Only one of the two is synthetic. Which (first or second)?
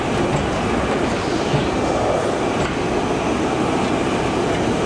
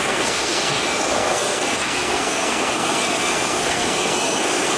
second